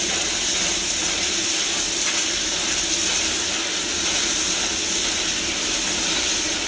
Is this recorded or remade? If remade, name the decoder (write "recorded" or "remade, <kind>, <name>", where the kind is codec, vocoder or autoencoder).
recorded